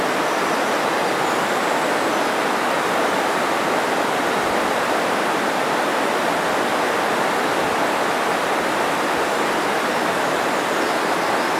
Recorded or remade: recorded